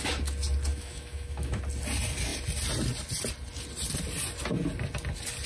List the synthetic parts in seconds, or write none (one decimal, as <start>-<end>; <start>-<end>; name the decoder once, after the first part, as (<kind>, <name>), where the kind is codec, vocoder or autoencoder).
0.7-1.6 (autoencoder, DAC-VAE)